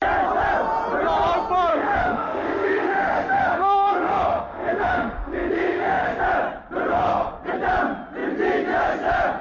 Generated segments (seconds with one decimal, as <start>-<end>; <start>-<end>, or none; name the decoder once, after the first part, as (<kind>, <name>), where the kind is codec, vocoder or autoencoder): 1.7-6.2 (autoencoder, DAC-VAE); 6.9-7.4